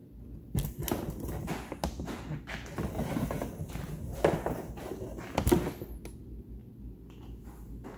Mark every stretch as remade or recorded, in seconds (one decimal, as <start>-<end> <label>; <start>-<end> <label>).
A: 0.0-8.0 recorded